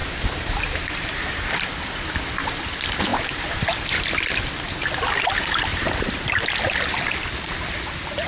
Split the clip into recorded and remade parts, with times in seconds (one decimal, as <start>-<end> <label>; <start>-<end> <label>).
0.0-2.0 remade; 2.0-3.1 recorded; 3.1-4.1 remade; 4.1-5.7 recorded; 5.7-6.3 remade; 6.3-8.3 recorded